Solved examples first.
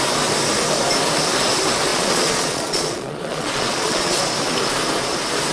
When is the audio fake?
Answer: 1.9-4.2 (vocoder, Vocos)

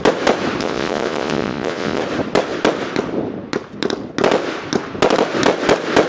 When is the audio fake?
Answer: 0.6-2.0 (vocoder, Vocos)

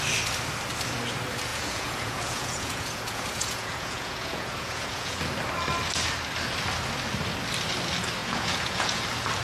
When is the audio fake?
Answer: 1.5-5.2 (vocoder, Vocos); 8.2-9.0

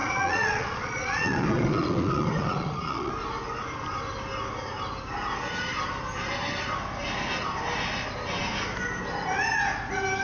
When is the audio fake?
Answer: 0.0-3.1 (vocoder, Vocos)

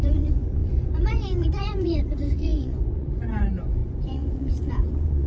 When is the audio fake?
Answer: 0.0-5.3 (vocoder, Vocos)

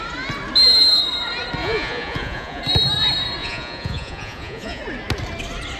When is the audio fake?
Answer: 1.6-2.6 (vocoder, Vocos); 3.4-4.8

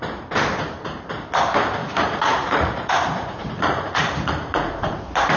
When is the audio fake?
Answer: 1.8-5.0 (vocoder, Vocos)